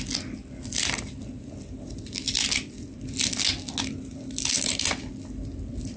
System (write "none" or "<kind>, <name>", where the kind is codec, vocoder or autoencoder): none